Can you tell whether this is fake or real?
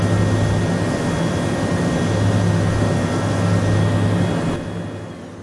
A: real